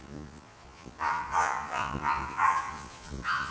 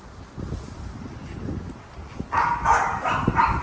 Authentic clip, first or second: second